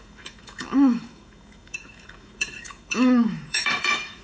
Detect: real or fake fake